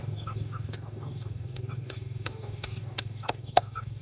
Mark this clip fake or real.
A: fake